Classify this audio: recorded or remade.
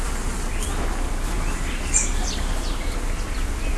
remade